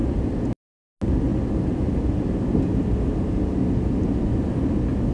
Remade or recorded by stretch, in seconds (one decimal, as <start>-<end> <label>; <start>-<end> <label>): 0.0-5.1 recorded